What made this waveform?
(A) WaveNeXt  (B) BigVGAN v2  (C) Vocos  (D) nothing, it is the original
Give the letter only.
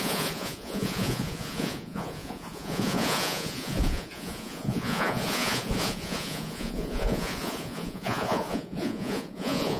C